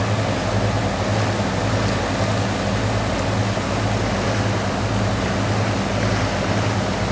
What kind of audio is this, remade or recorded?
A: recorded